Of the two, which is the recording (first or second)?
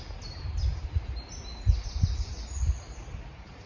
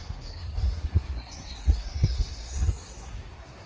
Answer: first